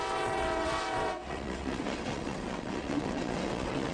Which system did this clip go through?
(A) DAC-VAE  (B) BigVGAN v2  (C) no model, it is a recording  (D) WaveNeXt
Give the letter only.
D